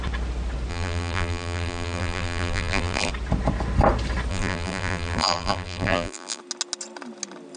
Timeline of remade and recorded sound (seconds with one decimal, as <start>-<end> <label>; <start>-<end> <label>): 0.0-0.7 recorded; 0.7-3.1 remade; 3.1-4.3 recorded; 4.3-6.4 remade; 6.4-7.6 recorded